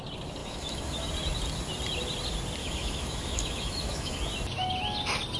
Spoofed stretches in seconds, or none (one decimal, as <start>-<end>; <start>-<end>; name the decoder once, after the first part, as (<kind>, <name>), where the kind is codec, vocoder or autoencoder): 0.4-1.1 (autoencoder, DAC-VAE); 2.6-4.2